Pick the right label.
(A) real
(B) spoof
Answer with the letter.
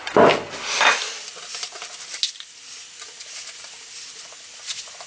A